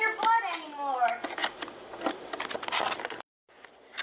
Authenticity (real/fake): real